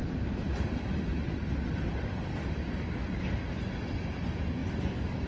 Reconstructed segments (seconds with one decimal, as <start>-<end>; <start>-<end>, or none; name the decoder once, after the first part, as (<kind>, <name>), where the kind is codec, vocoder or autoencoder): 0.0-3.2 (vocoder, BigVGAN v2); 4.6-5.3